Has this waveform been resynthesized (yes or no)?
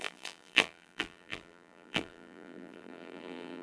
yes